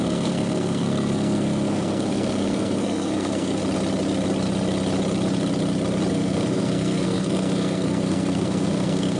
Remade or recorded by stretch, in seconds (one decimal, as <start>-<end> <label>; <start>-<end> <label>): 0.0-3.6 remade; 3.6-6.1 recorded; 6.1-9.2 remade